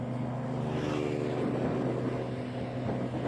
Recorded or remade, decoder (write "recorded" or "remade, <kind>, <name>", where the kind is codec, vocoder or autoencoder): recorded